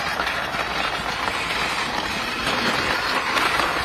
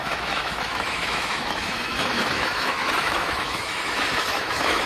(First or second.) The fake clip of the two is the second